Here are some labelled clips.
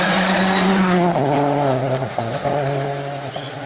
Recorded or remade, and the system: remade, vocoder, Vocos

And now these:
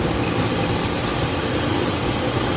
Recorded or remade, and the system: recorded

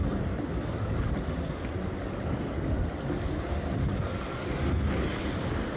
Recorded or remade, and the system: recorded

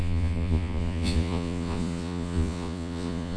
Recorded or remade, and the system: remade, vocoder, Vocos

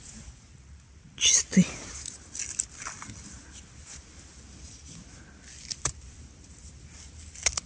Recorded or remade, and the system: recorded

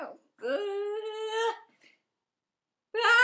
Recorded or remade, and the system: recorded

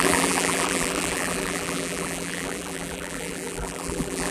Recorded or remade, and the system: remade, vocoder, BigVGAN v2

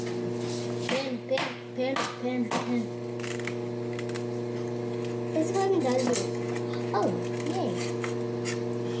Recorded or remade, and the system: recorded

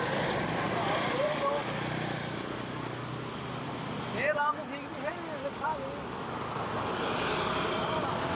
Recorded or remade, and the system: recorded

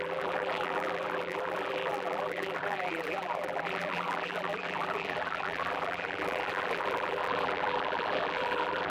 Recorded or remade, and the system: remade, vocoder, BigVGAN v2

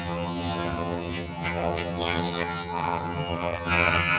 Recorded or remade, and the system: remade, vocoder, HiFi-GAN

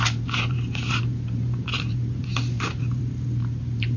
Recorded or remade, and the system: remade, vocoder, BigVGAN v2